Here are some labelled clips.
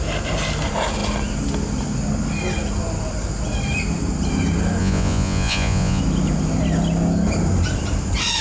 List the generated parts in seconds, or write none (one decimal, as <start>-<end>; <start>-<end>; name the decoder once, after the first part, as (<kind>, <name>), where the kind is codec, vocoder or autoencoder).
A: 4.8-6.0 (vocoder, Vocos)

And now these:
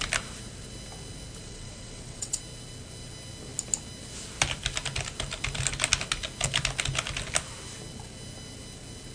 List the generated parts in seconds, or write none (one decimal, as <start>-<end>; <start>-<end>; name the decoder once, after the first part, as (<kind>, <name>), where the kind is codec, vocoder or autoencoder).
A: 1.4-2.4 (vocoder, WaveNeXt)

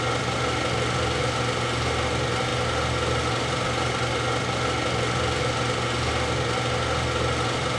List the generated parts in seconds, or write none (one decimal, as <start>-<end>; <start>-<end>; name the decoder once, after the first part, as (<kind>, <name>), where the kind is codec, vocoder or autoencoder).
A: none